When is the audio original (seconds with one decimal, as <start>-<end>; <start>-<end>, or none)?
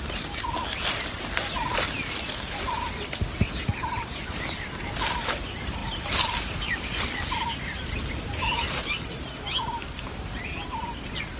0.0-11.4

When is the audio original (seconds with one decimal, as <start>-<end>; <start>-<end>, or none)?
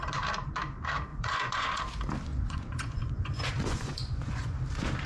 0.0-1.1; 1.8-2.3; 4.6-5.1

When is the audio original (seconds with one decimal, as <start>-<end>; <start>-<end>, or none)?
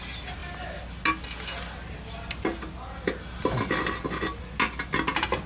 0.0-5.5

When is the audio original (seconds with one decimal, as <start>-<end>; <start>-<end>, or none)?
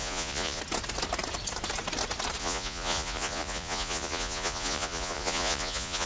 0.6-2.4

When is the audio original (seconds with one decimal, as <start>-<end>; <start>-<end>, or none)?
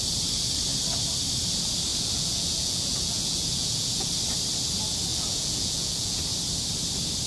0.0-1.9; 4.1-5.1; 6.2-7.3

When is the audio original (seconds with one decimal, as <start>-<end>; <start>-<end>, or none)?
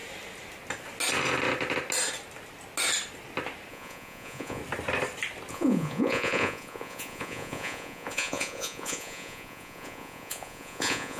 0.0-3.7; 4.6-5.5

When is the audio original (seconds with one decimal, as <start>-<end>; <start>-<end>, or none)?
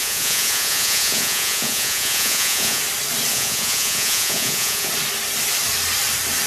2.8-3.3; 4.9-6.5